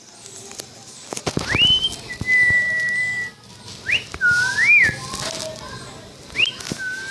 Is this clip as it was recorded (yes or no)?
yes